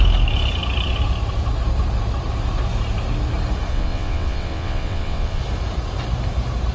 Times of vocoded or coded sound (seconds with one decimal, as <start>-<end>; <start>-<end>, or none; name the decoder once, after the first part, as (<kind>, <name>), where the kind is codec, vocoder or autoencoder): 3.7-5.4 (vocoder, WaveNeXt)